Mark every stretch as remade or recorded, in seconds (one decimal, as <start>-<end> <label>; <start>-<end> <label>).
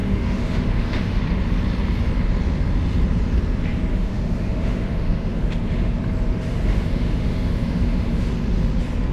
0.0-1.2 remade; 1.2-3.9 recorded; 3.9-6.0 remade; 6.0-6.5 recorded; 6.5-8.3 remade; 8.3-9.1 recorded